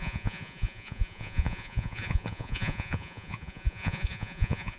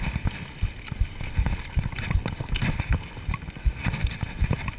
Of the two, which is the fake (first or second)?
first